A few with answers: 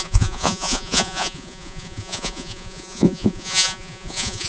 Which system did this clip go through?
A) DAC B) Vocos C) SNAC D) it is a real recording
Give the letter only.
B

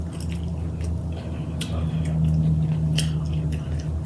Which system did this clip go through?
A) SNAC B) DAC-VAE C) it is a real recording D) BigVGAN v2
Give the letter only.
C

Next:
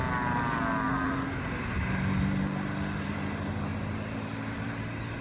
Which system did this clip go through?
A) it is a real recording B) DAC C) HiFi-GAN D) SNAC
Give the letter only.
A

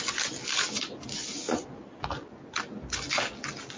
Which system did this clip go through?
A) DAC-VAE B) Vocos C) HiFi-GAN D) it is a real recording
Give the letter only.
D